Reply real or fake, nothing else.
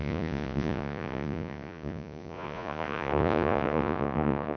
fake